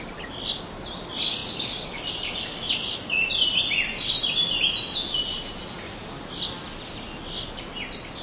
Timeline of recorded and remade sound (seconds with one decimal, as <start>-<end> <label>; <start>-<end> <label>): 0.0-8.2 recorded